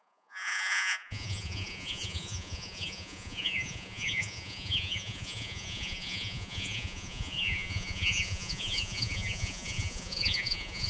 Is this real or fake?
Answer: fake